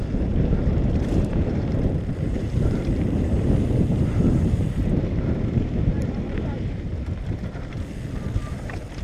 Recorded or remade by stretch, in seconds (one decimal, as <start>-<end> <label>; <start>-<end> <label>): 0.0-6.9 remade; 6.9-8.5 recorded; 8.5-9.0 remade